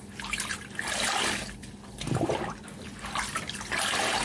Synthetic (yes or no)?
no